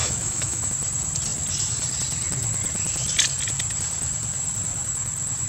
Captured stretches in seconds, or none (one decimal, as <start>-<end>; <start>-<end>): 0.7-5.5